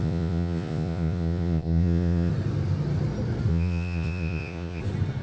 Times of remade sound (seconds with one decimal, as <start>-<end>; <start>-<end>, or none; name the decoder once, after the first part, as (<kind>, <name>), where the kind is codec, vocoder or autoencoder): 0.0-2.3 (vocoder, Vocos); 3.5-4.8